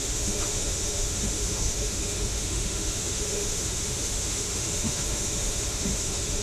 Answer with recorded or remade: remade